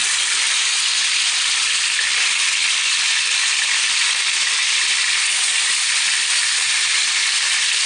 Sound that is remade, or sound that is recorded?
recorded